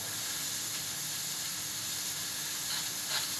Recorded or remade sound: recorded